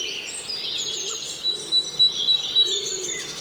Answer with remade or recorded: recorded